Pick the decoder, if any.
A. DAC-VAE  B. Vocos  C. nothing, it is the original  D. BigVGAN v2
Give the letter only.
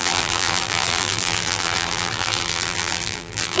D